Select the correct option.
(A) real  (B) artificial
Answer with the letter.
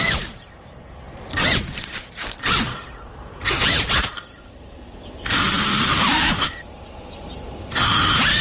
B